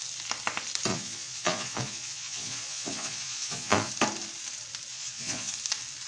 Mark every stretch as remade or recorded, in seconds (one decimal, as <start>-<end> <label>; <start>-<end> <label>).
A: 0.0-0.9 recorded; 0.9-3.9 remade; 3.9-4.9 recorded; 4.9-5.5 remade; 5.5-6.1 recorded